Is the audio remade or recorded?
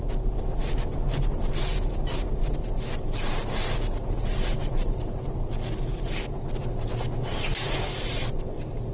recorded